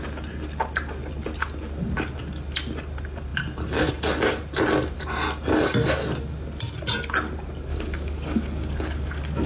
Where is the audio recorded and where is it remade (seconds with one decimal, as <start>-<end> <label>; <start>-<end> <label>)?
0.0-7.7 recorded; 7.7-9.5 remade